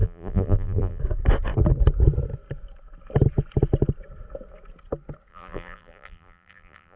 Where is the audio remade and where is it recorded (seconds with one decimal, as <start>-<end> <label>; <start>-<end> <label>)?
0.0-1.0 remade; 1.0-5.3 recorded; 5.3-7.0 remade